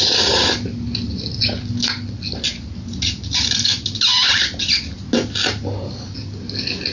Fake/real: real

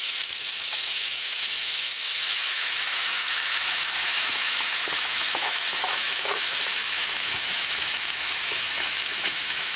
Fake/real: fake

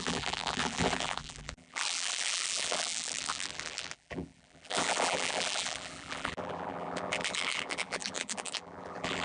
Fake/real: fake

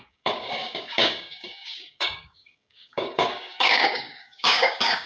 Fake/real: fake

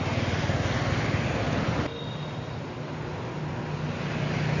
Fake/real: real